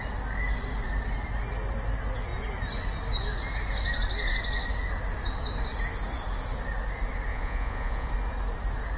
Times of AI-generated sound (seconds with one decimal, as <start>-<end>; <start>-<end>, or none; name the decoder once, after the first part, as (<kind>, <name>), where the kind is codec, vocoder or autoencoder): 7.3-8.1 (vocoder, Vocos)